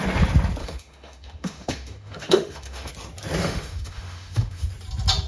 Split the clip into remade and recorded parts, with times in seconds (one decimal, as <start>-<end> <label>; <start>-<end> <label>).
0.0-0.6 recorded; 0.6-2.9 remade; 2.9-3.4 recorded; 3.4-4.7 remade; 4.7-5.3 recorded